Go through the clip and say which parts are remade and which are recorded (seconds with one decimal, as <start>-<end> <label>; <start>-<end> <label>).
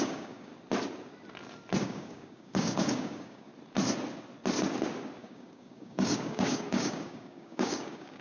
0.0-0.5 remade; 0.5-1.8 recorded; 1.8-3.5 remade; 3.5-5.2 recorded; 5.2-8.2 remade